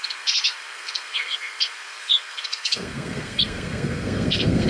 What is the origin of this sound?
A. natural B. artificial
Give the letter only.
B